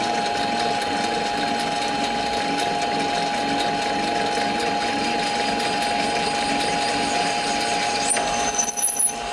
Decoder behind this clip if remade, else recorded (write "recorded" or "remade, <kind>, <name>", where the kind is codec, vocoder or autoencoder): recorded